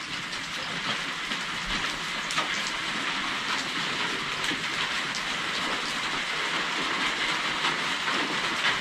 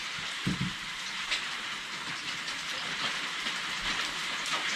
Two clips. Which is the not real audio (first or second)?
second